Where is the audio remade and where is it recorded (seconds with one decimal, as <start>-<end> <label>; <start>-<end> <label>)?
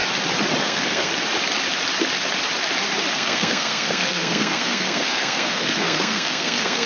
0.0-0.6 recorded; 0.6-1.1 remade; 1.1-3.1 recorded; 3.1-6.9 remade